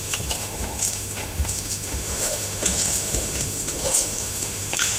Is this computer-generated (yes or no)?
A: yes